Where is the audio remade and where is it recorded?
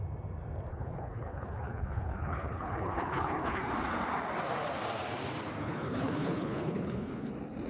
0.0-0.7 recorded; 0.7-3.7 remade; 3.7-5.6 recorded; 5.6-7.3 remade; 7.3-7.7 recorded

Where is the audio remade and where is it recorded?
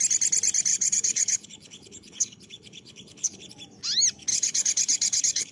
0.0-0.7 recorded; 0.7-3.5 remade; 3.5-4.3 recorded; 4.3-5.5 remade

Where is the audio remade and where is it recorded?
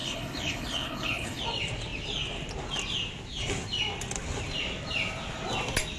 0.0-1.4 remade; 1.4-6.0 recorded